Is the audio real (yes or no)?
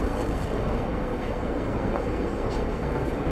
no